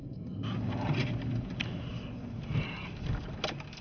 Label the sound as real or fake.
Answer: real